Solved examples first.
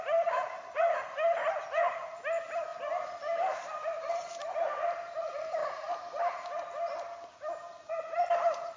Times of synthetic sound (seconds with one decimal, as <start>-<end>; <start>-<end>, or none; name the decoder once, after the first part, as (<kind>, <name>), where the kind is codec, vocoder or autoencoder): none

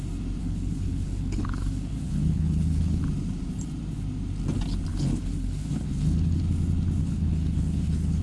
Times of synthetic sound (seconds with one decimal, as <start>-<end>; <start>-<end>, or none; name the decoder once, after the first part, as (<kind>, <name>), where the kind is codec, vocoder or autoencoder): 0.4-3.0 (codec, HILCodec); 4.9-6.4; 7.0-8.2

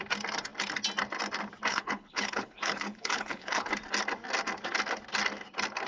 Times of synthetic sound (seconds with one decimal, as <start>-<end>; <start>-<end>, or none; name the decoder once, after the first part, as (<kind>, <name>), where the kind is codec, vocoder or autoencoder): 1.7-3.7 (codec, HILCodec)

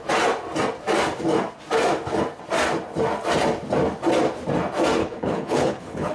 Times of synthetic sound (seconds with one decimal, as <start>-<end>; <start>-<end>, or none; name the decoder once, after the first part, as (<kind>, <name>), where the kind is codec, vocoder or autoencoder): 5.0-6.1 (codec, HILCodec)

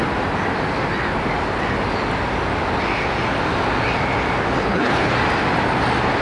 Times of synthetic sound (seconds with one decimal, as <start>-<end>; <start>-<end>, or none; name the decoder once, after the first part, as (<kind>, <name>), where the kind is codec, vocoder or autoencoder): 4.6-5.1 (codec, HILCodec)

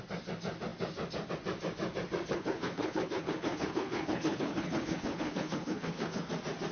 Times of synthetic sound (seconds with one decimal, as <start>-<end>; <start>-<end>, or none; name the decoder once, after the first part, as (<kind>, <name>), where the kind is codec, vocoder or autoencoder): 2.3-6.3 (codec, HILCodec)

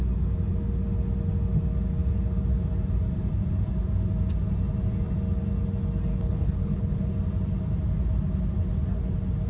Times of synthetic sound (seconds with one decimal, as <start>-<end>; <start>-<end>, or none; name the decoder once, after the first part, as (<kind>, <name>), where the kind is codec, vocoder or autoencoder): 6.1-7.1 (codec, HILCodec)